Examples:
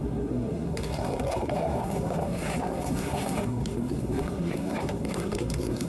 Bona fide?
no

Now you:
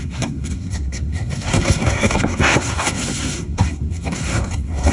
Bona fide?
no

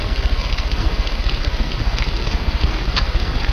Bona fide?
no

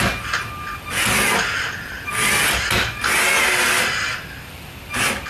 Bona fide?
yes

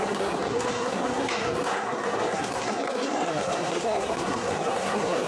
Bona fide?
no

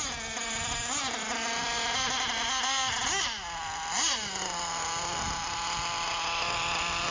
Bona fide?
yes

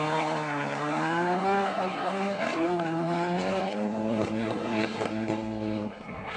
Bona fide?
no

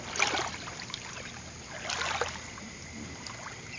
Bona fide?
yes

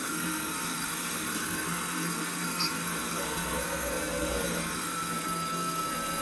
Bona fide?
no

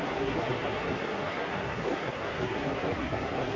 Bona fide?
no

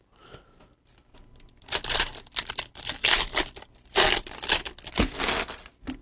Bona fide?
yes